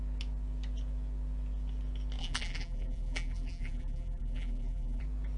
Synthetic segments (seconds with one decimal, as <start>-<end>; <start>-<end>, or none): 2.2-5.0